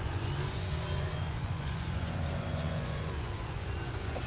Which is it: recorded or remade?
remade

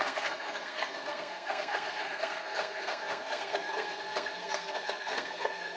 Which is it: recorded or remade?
remade